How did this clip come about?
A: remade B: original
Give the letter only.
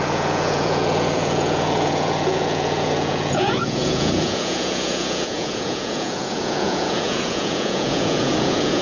A